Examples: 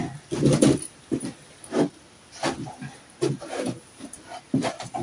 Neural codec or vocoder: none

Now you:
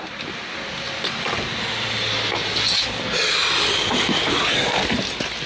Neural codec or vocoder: none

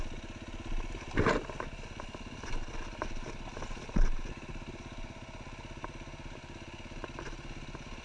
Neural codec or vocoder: none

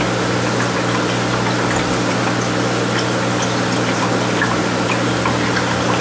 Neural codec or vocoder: none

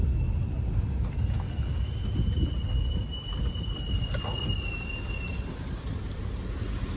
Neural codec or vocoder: none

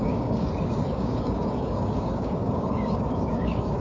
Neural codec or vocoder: codec, DAC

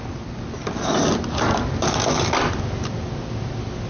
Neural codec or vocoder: none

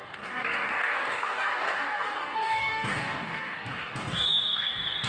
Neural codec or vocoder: codec, DAC